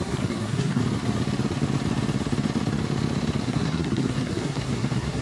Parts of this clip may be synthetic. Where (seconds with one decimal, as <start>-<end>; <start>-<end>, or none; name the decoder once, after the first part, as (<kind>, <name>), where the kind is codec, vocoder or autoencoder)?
0.0-0.8 (codec, SNAC); 3.4-5.2